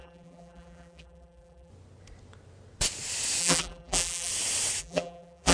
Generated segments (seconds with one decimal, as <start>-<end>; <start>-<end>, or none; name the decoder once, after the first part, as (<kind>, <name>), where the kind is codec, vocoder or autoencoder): 0.0-1.7 (vocoder, BigVGAN v2); 3.4-4.3; 4.8-5.5